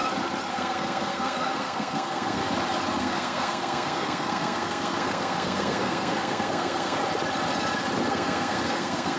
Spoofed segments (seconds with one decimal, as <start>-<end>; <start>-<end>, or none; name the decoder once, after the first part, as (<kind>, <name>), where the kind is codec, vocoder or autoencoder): 0.5-2.4 (codec, SNAC); 3.0-7.0; 8.1-9.2